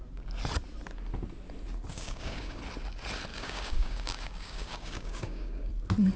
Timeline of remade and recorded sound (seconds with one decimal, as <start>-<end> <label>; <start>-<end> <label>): 0.0-1.9 recorded; 1.9-2.6 remade; 2.6-3.3 recorded; 3.3-5.7 remade; 5.7-6.2 recorded